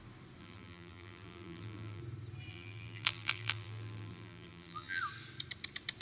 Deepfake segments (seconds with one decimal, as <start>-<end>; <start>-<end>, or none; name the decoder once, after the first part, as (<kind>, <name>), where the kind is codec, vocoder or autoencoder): 0.4-2.0 (vocoder, BigVGAN v2); 2.5-5.0